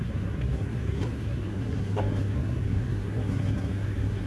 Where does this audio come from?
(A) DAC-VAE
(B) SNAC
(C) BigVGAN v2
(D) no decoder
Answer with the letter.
B